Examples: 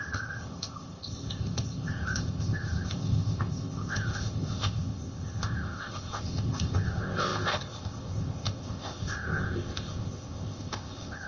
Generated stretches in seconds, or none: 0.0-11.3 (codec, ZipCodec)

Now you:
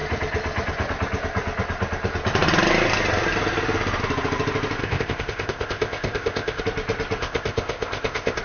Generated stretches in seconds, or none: 4.8-6.6 (codec, ZipCodec); 7.2-8.4

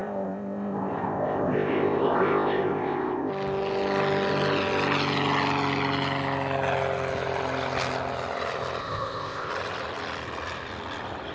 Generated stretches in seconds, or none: 0.0-3.3 (codec, ZipCodec); 8.8-9.5

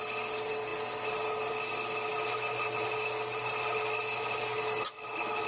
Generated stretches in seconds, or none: none

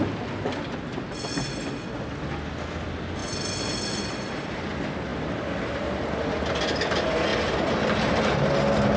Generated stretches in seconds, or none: none